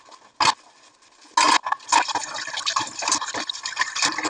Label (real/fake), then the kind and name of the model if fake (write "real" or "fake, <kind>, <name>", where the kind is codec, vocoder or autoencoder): real